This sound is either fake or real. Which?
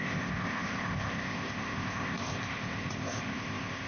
fake